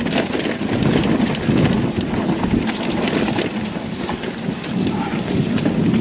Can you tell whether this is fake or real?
real